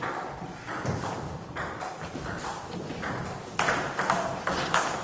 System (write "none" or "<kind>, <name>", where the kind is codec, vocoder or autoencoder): none